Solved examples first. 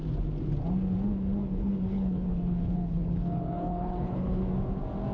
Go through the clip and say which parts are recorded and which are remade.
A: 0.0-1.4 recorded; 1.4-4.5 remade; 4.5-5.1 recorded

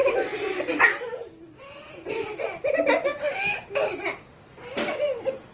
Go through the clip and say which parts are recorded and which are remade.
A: 0.0-5.5 recorded